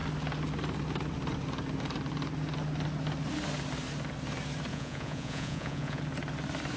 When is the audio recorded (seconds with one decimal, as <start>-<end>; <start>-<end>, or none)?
0.0-4.7; 6.0-6.8